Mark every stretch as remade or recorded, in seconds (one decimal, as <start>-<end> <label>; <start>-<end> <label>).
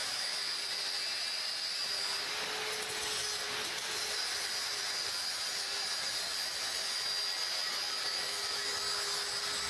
0.0-0.5 remade; 0.5-9.7 recorded